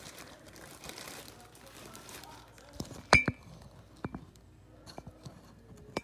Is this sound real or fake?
fake